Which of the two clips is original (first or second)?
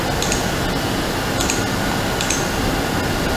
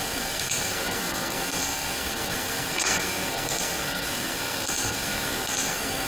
first